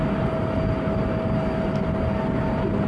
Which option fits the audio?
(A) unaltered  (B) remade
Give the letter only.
A